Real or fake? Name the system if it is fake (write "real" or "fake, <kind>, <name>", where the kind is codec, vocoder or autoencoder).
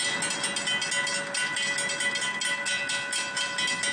real